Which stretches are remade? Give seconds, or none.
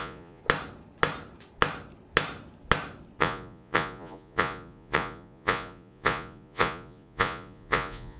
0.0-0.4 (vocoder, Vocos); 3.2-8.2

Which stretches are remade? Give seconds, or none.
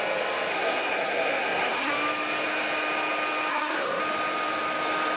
0.5-1.9 (codec, SNAC); 3.5-4.0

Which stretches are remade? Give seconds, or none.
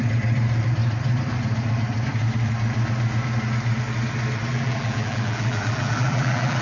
4.5-6.6 (vocoder, BigVGAN v2)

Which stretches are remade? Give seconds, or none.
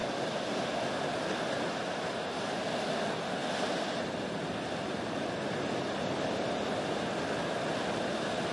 none